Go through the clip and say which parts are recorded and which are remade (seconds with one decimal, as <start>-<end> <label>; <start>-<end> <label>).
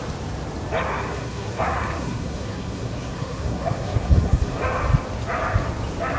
0.0-0.9 recorded; 0.9-4.6 remade; 4.6-6.2 recorded